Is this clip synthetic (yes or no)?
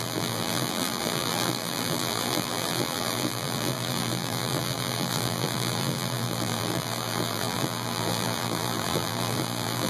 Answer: yes